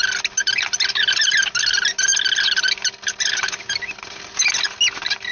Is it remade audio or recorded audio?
recorded